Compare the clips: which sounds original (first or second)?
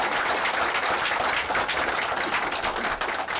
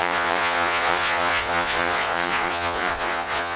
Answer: first